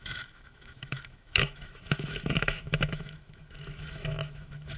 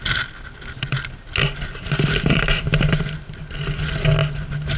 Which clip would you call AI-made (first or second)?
first